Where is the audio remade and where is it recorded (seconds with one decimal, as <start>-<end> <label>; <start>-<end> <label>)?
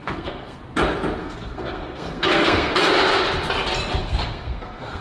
0.0-0.6 remade; 0.6-1.2 recorded; 1.2-2.7 remade; 2.7-4.0 recorded; 4.0-5.0 remade